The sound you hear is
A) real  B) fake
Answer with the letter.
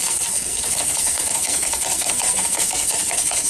B